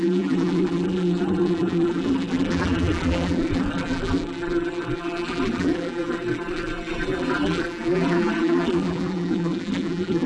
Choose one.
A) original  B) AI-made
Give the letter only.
B